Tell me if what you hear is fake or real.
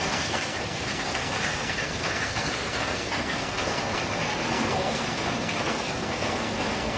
fake